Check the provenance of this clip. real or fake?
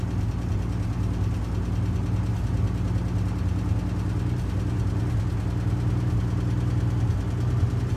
real